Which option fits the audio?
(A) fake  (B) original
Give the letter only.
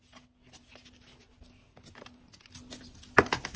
B